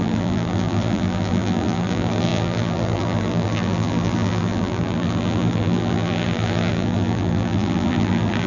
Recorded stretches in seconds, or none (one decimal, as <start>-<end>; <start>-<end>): none